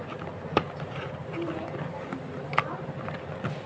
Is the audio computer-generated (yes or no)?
no